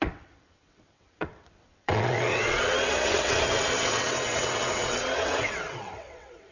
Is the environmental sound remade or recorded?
remade